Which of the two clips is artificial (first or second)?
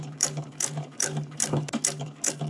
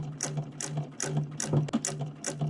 first